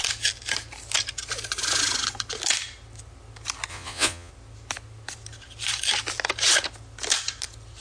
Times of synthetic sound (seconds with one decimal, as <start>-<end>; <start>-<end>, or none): 3.7-4.3